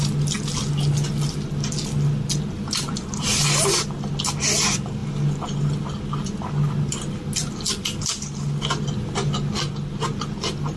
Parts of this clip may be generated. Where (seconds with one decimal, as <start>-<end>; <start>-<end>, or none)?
none